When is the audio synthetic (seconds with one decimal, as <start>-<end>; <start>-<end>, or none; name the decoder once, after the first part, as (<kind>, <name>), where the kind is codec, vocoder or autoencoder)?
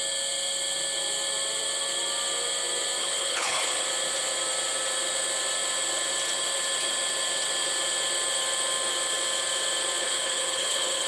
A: 3.0-3.8 (codec, HILCodec); 10.0-11.1